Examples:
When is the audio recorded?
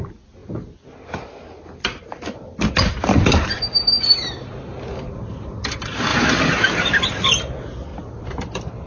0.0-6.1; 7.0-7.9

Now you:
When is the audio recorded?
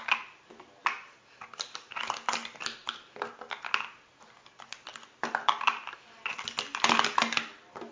0.0-2.8; 3.3-4.9; 6.2-7.9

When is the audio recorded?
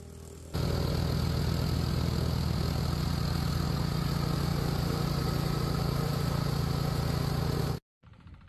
0.0-4.5; 6.4-8.5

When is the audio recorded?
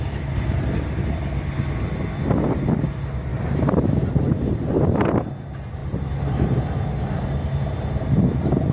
0.0-3.3; 4.3-8.7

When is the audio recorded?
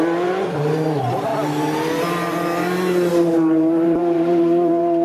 1.3-3.1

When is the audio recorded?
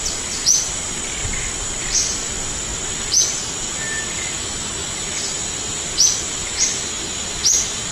0.0-7.9